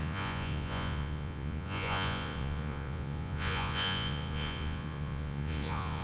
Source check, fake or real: fake